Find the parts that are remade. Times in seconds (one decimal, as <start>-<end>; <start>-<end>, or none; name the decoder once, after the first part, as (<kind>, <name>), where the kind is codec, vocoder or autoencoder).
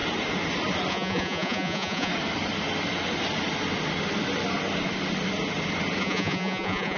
0.9-2.1 (vocoder, Vocos); 6.0-7.0